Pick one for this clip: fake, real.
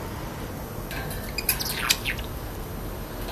real